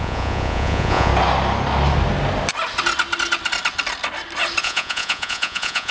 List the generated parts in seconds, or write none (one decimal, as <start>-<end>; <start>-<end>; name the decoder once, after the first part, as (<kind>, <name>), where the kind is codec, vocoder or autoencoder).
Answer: 0.0-1.1 (vocoder, Vocos); 4.6-5.9

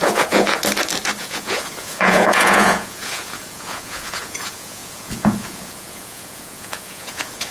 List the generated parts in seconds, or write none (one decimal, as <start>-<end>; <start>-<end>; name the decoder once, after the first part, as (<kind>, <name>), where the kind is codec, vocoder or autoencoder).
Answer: 0.0-0.6 (vocoder, Vocos); 1.2-7.5

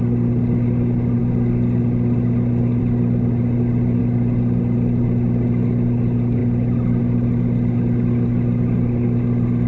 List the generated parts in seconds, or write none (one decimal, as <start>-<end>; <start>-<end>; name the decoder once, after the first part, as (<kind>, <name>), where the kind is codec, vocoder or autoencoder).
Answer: none

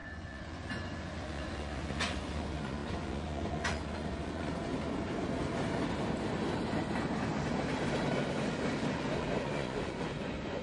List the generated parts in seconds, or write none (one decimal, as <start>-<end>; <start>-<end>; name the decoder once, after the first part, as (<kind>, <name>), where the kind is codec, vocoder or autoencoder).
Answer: 0.0-4.7 (vocoder, Vocos); 8.9-10.6

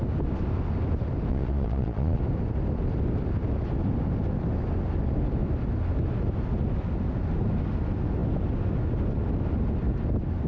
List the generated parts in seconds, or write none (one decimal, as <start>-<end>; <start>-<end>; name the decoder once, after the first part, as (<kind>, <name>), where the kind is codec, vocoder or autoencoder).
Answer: 1.3-2.2 (vocoder, Vocos)

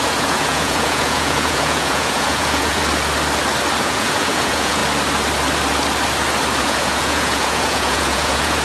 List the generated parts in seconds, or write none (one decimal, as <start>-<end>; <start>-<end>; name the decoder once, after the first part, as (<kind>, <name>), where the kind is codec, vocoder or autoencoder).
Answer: 0.0-2.8 (vocoder, Vocos); 3.8-4.8; 6.6-8.6